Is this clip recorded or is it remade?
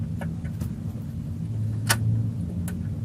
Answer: recorded